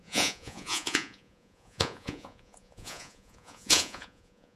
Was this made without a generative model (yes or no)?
no